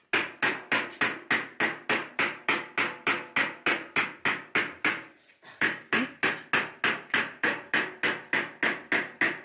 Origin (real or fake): real